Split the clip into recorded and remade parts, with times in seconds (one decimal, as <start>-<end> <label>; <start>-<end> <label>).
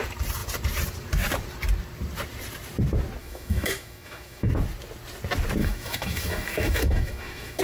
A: 0.0-3.2 recorded; 3.2-4.5 remade; 4.5-5.6 recorded; 5.6-7.6 remade